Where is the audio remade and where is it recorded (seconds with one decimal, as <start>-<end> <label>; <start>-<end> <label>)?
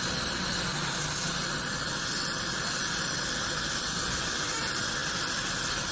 0.0-0.7 recorded; 0.7-1.2 remade; 1.2-2.8 recorded; 2.8-4.2 remade; 4.2-5.9 recorded